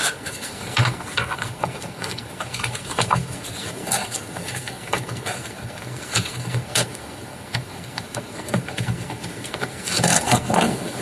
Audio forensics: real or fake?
fake